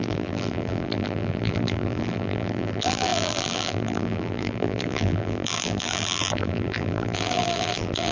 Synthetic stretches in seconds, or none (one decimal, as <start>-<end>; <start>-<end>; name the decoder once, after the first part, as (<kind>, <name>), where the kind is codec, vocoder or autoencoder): 0.0-8.1 (vocoder, BigVGAN v2)